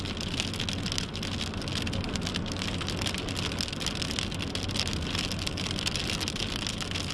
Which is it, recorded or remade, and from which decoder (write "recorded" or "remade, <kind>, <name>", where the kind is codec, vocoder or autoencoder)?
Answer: recorded